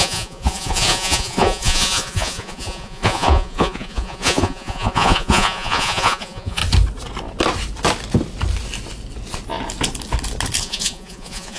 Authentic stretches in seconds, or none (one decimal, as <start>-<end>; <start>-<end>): 6.6-10.6